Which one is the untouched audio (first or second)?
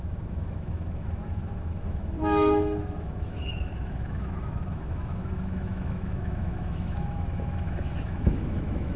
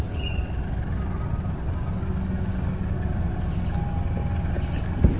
second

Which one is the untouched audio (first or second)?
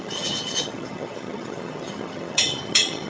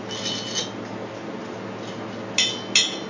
second